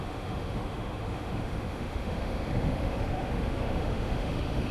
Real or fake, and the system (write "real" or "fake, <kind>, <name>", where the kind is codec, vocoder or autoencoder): fake, autoencoder, DAC-VAE